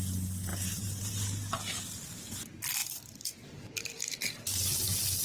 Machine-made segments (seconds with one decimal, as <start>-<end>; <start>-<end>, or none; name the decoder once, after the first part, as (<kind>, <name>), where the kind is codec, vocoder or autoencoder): 0.5-1.2 (vocoder, BigVGAN v2); 2.8-4.0

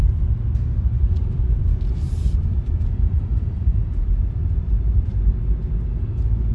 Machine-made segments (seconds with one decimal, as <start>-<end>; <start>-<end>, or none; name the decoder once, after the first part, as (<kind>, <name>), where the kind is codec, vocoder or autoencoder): 1.2-5.1 (vocoder, BigVGAN v2)

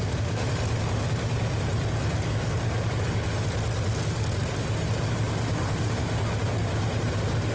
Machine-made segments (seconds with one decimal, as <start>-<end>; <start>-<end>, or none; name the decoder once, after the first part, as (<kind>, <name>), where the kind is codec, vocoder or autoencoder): 4.4-5.5 (vocoder, BigVGAN v2)

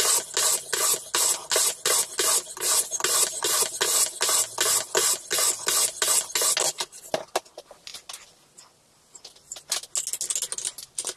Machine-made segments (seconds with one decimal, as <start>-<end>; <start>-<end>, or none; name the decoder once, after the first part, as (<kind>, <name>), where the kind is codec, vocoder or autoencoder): none

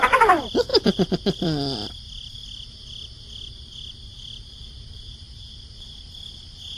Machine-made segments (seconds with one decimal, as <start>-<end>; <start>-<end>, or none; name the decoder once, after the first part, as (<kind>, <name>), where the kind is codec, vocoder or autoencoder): 0.7-2.4 (vocoder, BigVGAN v2); 4.1-5.4

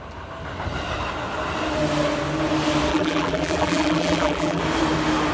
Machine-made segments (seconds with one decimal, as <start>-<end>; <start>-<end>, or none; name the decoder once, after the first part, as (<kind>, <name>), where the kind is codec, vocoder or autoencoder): 2.9-4.6 (vocoder, BigVGAN v2)

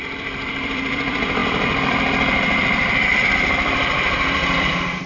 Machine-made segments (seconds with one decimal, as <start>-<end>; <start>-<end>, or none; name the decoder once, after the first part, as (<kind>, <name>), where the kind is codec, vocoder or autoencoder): 0.0-5.1 (vocoder, BigVGAN v2)

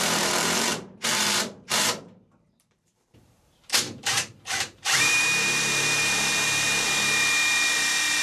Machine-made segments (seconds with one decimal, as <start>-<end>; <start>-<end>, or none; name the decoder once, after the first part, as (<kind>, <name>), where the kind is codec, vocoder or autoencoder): 0.0-8.2 (vocoder, BigVGAN v2)